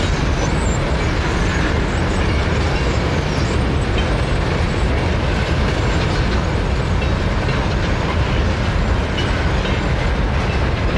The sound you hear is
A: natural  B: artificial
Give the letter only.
A